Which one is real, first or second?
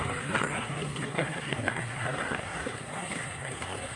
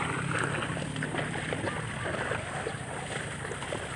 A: second